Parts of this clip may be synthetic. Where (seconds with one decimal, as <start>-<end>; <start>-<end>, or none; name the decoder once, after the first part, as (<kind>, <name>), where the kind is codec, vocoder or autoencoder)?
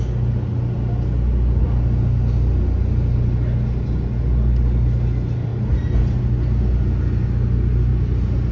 none